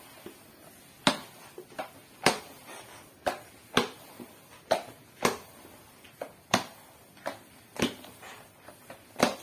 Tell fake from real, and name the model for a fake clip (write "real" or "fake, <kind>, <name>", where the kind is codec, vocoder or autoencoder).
real